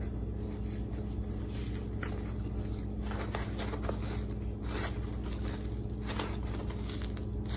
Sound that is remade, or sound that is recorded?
recorded